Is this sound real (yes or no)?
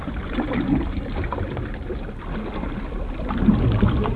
yes